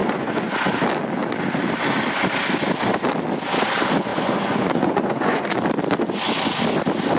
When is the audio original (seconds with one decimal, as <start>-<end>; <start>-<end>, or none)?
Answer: 0.5-4.1; 5.6-7.2